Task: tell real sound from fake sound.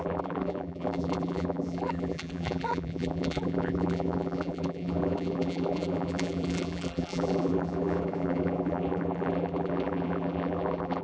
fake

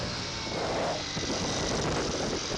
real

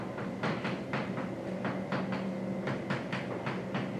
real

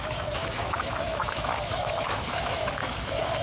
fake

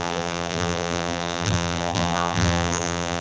fake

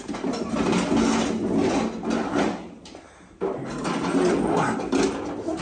real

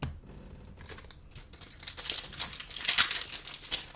real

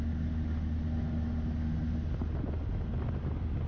real